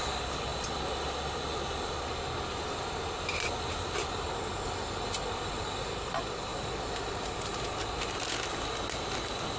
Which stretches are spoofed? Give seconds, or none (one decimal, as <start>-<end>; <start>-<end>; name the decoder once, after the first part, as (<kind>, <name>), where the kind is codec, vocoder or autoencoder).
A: none